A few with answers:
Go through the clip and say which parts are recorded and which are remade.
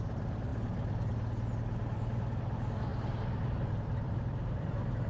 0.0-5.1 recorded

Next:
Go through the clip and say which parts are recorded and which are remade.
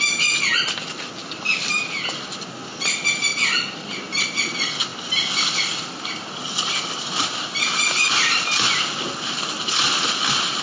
0.0-1.2 recorded; 1.2-1.8 remade; 1.8-10.6 recorded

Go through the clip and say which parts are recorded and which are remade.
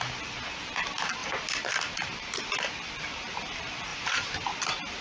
0.0-3.9 recorded; 3.9-4.5 remade; 4.5-5.0 recorded